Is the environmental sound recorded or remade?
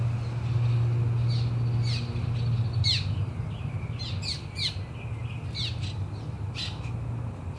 recorded